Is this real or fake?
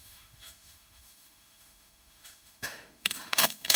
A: fake